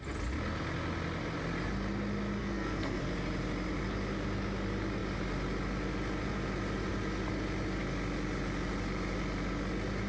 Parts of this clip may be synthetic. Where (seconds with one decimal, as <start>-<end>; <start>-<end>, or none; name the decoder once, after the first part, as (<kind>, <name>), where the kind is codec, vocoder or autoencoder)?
2.4-3.0 (codec, SNAC)